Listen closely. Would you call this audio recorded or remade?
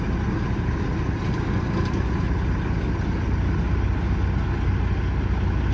recorded